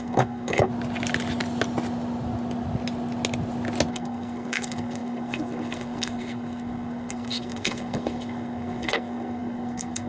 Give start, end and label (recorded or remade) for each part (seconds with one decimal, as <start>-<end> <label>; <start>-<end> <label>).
0.0-0.7 remade; 0.7-3.9 recorded; 3.9-10.1 remade